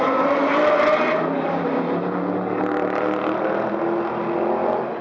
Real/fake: real